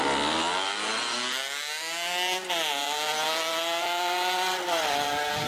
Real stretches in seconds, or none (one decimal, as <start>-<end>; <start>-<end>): 0.0-5.5